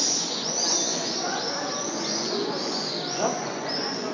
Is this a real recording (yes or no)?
no